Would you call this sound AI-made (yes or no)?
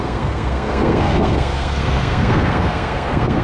yes